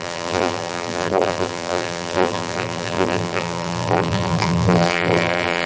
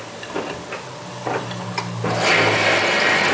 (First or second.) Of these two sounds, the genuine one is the second